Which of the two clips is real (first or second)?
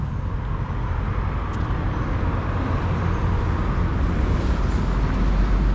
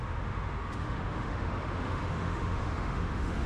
first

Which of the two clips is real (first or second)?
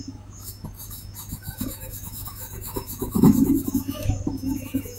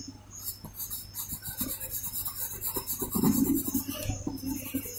second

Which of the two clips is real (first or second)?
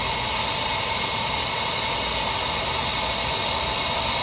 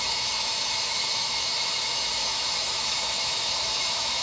first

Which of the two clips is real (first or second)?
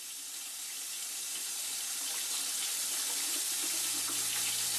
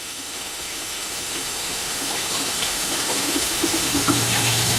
first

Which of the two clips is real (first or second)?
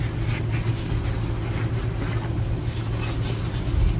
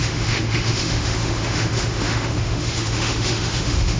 first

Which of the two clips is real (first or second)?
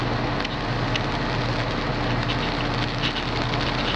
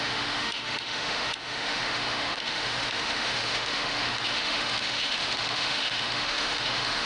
first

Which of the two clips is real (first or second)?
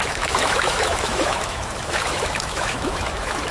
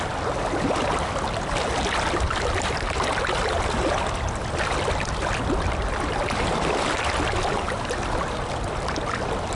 second